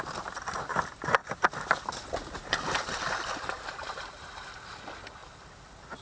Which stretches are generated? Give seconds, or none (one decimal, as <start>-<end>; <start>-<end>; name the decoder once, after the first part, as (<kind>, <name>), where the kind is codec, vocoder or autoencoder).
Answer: 0.0-1.2 (vocoder, BigVGAN v2); 3.3-5.2